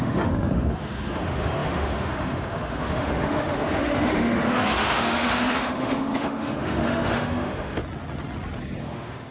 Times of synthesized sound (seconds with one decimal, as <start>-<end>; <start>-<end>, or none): 0.0-7.8; 8.8-9.3